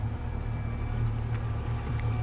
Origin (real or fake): real